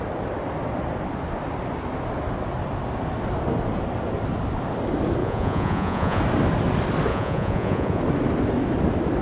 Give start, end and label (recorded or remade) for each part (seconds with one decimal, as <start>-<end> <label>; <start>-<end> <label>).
0.0-5.2 recorded; 5.2-6.2 remade; 6.2-7.1 recorded; 7.1-8.0 remade; 8.0-9.2 recorded